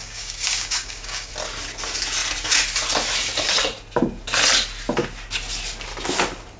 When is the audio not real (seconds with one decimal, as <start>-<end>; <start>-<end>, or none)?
0.0-1.3